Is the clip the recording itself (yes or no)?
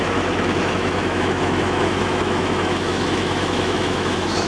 no